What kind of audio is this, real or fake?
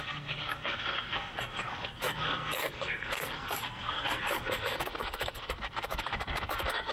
fake